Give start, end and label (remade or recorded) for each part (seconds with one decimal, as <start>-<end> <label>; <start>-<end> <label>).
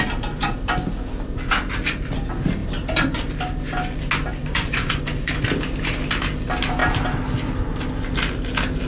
0.0-4.4 recorded; 4.4-5.3 remade; 5.3-8.9 recorded